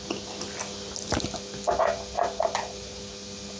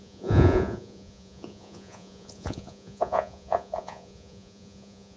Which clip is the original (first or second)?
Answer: first